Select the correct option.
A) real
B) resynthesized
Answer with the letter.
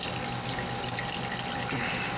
A